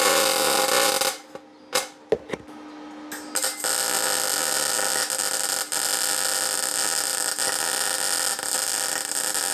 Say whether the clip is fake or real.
real